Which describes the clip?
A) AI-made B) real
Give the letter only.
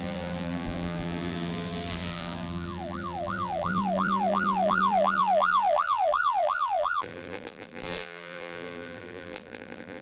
A